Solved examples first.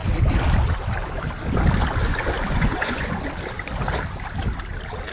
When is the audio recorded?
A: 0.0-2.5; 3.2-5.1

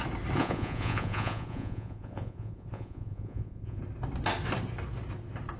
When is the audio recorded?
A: 0.0-0.4; 3.8-5.6

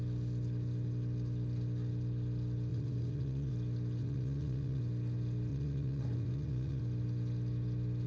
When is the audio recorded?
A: 0.0-2.7; 3.5-4.0; 4.8-5.5; 6.8-8.1

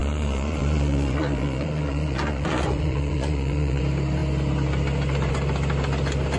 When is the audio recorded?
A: 3.8-6.4

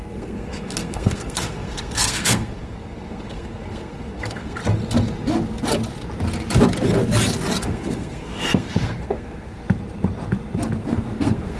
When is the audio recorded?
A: 4.6-7.7; 9.6-10.8

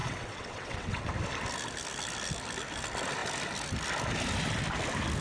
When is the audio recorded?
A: 1.1-5.2